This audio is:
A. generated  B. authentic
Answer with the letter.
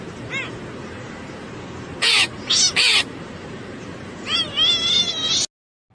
B